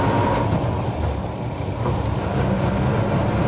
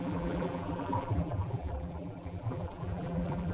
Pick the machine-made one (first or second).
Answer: second